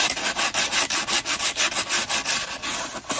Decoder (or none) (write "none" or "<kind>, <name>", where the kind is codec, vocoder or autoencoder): none